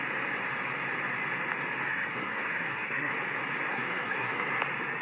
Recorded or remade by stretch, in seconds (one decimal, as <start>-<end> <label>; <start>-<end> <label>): 0.0-1.9 recorded; 1.9-3.1 remade; 3.1-3.7 recorded; 3.7-4.6 remade; 4.6-5.0 recorded